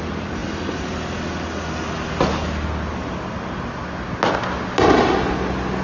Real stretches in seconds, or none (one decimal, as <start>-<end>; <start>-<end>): 0.0-5.8